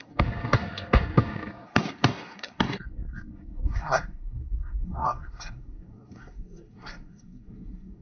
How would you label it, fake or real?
fake